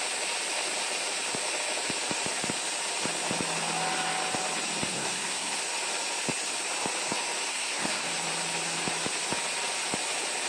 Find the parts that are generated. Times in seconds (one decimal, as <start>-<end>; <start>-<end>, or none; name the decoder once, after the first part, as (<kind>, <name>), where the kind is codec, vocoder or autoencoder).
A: 4.9-5.6 (codec, SNAC); 7.5-8.1